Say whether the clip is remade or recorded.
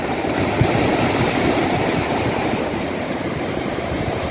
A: remade